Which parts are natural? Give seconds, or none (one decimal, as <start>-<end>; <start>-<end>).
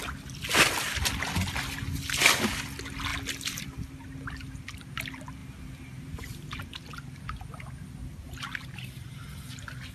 0.0-5.4; 6.6-9.9